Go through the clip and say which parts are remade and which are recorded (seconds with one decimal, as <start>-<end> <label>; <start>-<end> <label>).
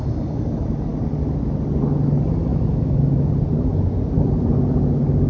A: 0.0-2.5 recorded; 2.5-3.3 remade; 3.3-5.3 recorded